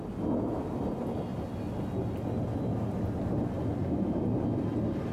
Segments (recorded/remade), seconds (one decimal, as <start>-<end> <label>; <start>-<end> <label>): 0.0-5.1 recorded